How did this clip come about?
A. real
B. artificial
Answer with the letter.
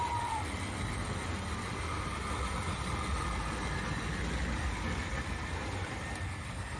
A